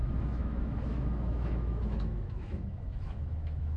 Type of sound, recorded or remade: remade